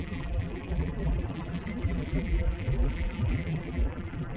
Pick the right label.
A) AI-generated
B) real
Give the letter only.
A